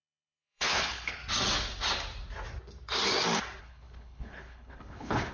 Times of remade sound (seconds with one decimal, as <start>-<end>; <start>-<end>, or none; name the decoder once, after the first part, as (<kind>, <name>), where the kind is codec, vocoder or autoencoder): 0.0-1.2 (codec, HILCodec); 3.6-5.3